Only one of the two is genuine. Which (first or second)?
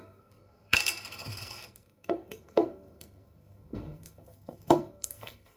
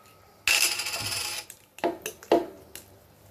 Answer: second